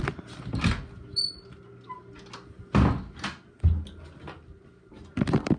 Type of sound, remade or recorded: recorded